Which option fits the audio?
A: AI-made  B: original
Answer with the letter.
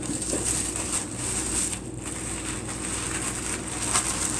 B